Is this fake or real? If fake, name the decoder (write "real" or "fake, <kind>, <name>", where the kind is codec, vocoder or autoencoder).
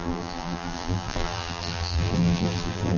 fake, vocoder, BigVGAN v2